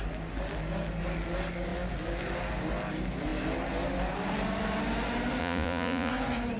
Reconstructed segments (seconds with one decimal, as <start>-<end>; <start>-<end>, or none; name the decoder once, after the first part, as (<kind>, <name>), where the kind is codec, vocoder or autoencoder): 5.4-6.1 (vocoder, Vocos)